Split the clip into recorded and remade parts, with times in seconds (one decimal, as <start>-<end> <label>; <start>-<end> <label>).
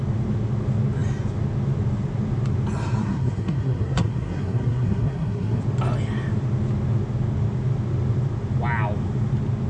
0.0-3.0 recorded; 3.0-5.6 remade; 5.6-9.7 recorded